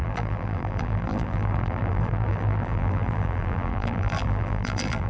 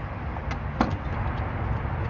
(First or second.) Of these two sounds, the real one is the second